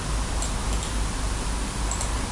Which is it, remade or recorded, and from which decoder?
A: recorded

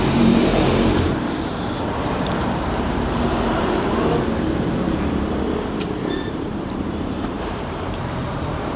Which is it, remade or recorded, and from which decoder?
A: remade, vocoder, BigVGAN v2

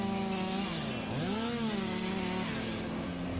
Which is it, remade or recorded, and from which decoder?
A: recorded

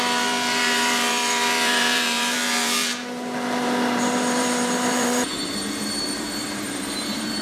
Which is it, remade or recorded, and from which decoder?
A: remade, vocoder, BigVGAN v2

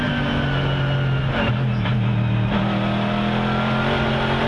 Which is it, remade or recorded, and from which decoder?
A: recorded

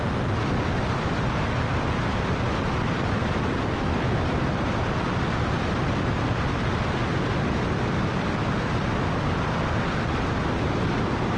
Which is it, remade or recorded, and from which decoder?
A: recorded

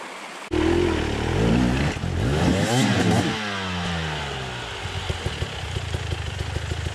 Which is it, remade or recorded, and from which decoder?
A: recorded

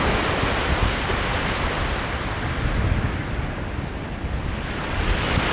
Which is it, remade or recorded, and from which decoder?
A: recorded